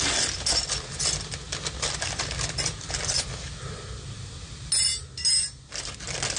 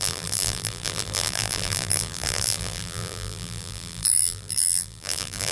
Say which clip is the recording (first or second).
first